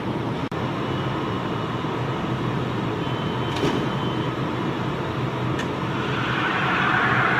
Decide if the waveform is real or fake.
fake